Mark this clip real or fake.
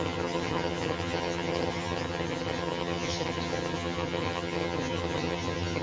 fake